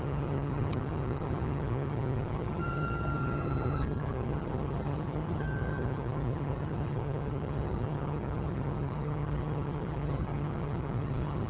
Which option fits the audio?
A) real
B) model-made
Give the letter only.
B